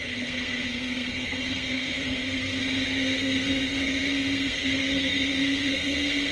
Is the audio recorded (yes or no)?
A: no